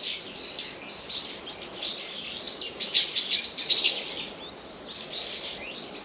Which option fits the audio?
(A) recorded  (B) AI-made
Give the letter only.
A